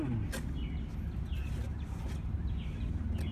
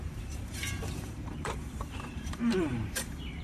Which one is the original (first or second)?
first